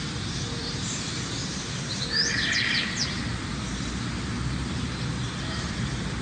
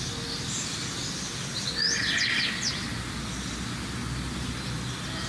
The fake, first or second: first